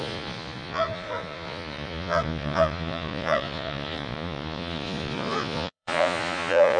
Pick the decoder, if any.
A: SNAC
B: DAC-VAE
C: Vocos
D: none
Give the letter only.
C